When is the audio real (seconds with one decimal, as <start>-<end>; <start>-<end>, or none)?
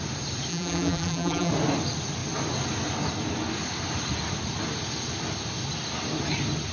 0.0-0.5; 1.5-6.7